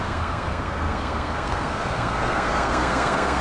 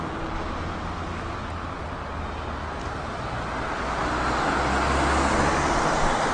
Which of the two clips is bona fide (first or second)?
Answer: second